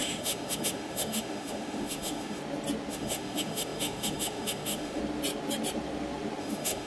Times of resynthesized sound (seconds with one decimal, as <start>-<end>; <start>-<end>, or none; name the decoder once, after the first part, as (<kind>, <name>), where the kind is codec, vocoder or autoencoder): 0.0-2.4 (autoencoder, DAC-VAE); 2.9-5.0; 6.4-6.9